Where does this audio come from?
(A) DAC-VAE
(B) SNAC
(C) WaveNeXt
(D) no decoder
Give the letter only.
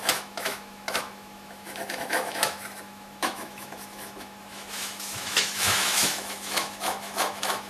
A